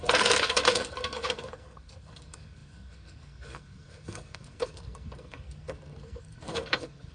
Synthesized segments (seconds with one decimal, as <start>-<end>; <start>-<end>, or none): 0.0-7.1